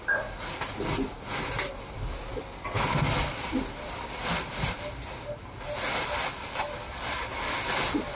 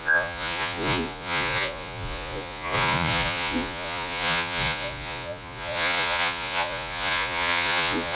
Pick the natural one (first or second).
first